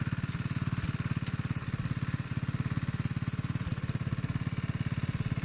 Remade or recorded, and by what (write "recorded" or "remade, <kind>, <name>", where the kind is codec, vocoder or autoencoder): recorded